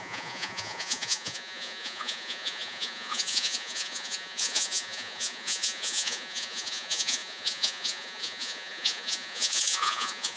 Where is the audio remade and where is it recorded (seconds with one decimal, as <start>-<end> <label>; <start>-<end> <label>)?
0.0-10.4 remade